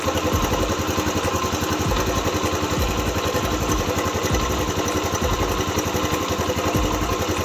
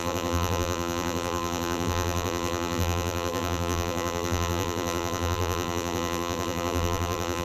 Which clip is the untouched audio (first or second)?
first